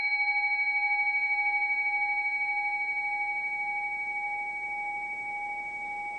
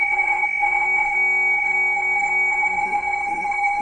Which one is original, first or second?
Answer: first